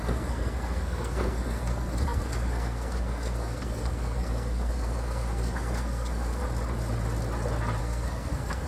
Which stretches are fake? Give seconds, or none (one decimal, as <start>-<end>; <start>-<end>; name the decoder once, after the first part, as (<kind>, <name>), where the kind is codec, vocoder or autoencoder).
0.0-6.4 (codec, SNAC); 7.8-8.7